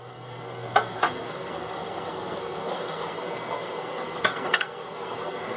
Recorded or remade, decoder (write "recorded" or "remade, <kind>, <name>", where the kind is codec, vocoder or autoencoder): remade, codec, SNAC